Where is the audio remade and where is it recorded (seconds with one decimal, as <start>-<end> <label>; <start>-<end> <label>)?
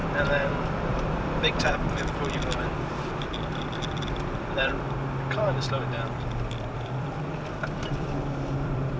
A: 0.0-4.7 remade; 4.7-5.4 recorded; 5.4-9.0 remade